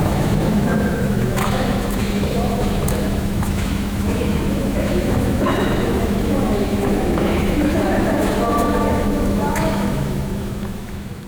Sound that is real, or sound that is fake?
fake